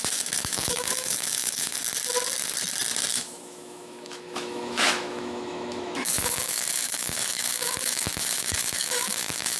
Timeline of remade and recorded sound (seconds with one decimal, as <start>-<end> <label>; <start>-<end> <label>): 0.0-1.8 remade; 1.8-3.1 recorded; 3.1-9.6 remade